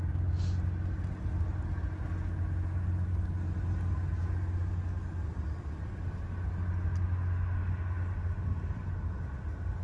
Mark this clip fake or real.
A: real